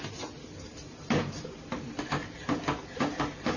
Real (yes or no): yes